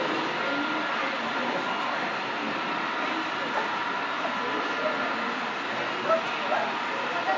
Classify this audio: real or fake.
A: real